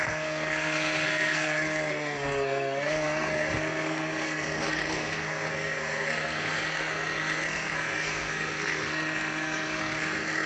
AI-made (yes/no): yes